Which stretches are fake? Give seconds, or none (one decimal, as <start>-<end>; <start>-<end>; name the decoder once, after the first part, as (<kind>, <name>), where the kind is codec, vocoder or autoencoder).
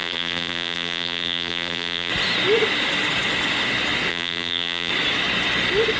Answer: 0.0-2.1 (vocoder, BigVGAN v2); 4.1-4.9